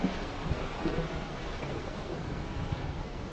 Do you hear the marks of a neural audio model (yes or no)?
yes